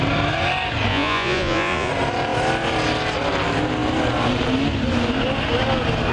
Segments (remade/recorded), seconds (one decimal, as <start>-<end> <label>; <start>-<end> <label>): 0.0-0.9 recorded; 0.9-1.9 remade; 1.9-6.1 recorded